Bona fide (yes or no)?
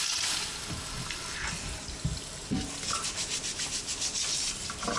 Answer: yes